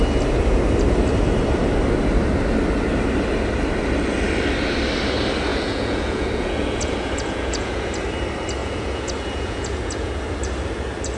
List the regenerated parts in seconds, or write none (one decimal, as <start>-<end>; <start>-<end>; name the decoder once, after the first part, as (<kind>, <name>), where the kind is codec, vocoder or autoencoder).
5.5-7.9 (vocoder, Vocos); 8.6-10.1